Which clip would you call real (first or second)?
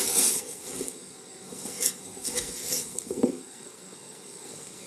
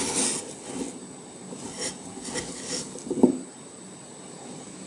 second